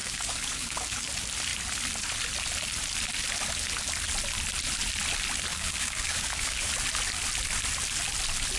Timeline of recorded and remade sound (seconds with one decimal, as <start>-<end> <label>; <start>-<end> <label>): 0.0-1.1 remade; 1.1-5.5 recorded; 5.5-6.7 remade; 6.7-8.6 recorded